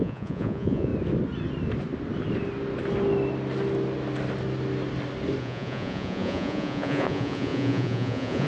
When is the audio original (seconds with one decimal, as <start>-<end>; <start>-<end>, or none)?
0.9-5.4